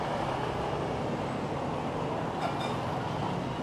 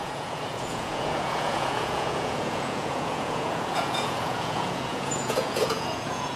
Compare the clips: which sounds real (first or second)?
first